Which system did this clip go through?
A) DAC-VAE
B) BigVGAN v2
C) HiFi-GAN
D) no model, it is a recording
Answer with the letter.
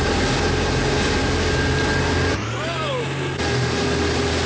D